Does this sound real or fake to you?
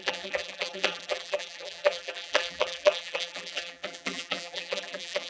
fake